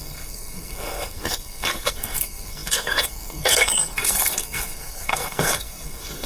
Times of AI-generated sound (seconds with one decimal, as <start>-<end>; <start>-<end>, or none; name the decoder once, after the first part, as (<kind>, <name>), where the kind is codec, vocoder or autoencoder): 0.0-6.3 (codec, SNAC)